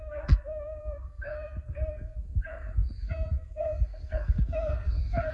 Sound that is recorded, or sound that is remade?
remade